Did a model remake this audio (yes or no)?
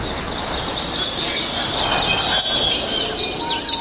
no